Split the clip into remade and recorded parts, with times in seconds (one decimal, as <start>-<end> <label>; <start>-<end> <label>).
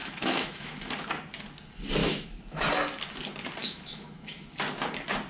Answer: 0.0-0.9 remade; 0.9-2.0 recorded; 2.0-2.7 remade; 2.7-3.6 recorded; 3.6-4.5 remade; 4.5-5.3 recorded